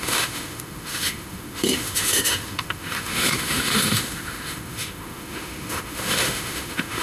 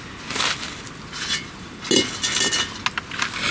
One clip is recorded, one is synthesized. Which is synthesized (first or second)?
first